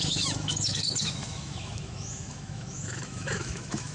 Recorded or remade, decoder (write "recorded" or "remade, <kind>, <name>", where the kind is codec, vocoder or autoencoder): remade, autoencoder, DAC-VAE